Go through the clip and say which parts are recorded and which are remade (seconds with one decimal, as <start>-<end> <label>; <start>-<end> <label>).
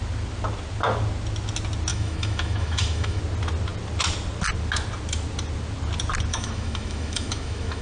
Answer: 0.0-1.9 recorded; 1.9-3.2 remade; 3.2-6.3 recorded; 6.3-7.8 remade